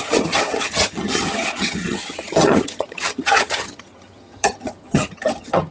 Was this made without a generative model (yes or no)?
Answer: no